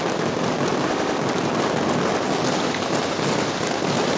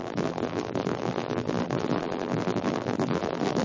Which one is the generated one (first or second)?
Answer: second